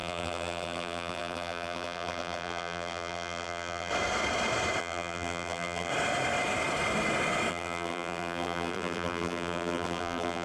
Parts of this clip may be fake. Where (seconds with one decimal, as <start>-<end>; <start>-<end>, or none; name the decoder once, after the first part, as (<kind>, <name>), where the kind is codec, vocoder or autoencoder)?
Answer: 0.0-3.9 (vocoder, BigVGAN v2); 4.8-5.9; 7.5-10.4